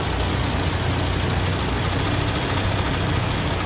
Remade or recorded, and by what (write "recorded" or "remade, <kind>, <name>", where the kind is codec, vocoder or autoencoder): recorded